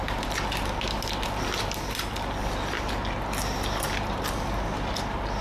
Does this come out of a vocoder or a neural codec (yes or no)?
no